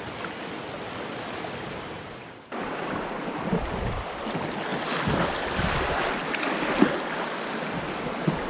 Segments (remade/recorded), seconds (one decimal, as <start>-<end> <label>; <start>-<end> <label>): 0.0-8.5 recorded